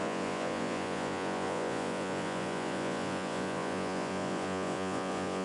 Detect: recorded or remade remade